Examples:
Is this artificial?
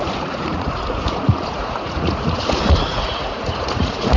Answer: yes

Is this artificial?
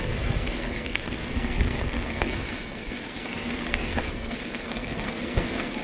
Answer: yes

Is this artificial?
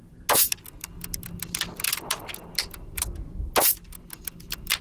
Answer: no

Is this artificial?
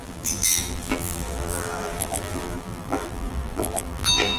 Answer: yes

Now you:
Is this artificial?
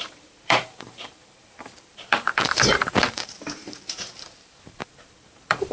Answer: yes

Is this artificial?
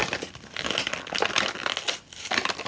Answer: no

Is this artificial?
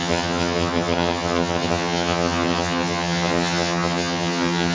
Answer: yes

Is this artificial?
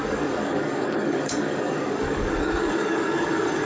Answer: yes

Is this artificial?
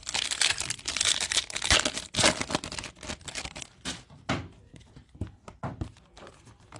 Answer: no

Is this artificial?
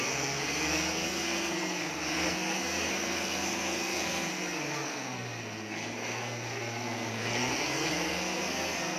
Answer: yes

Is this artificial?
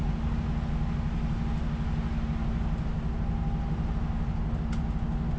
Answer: no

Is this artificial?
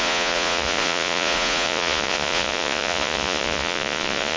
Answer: yes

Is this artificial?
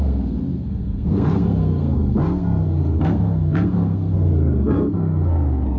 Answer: yes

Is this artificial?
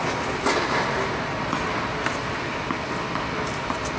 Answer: no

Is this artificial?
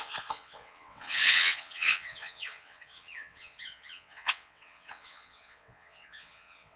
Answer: yes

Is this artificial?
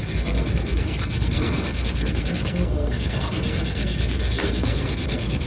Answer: yes